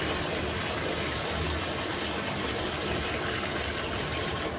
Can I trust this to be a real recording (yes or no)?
yes